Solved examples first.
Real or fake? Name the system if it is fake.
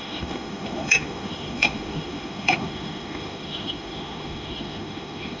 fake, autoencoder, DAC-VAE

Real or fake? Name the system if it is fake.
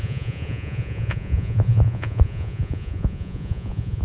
fake, vocoder, Vocos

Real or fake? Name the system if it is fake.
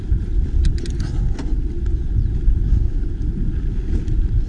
real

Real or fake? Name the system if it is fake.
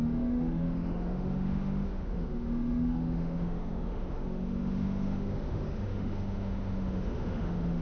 fake, autoencoder, DAC-VAE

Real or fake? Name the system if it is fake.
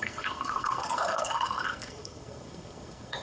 fake, codec, SNAC